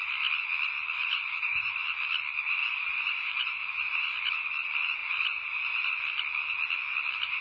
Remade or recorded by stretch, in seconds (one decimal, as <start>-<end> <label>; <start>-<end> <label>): 0.0-1.0 recorded; 1.0-1.8 remade; 1.8-2.6 recorded; 2.6-4.3 remade; 4.3-5.0 recorded; 5.0-5.9 remade; 5.9-7.4 recorded